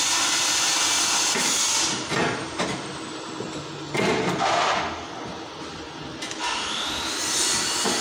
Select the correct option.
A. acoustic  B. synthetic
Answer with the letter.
A